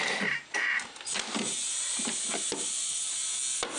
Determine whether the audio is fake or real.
real